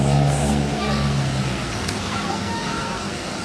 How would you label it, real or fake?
fake